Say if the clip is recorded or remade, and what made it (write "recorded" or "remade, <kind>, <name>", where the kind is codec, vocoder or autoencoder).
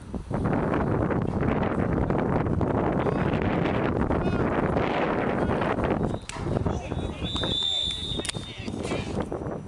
recorded